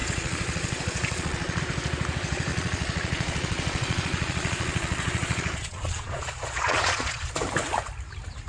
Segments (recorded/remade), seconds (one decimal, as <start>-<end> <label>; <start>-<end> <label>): 0.0-1.6 remade; 1.6-2.5 recorded; 2.5-7.3 remade; 7.3-8.5 recorded